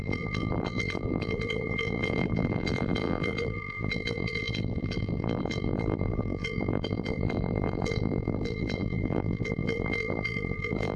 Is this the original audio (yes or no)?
no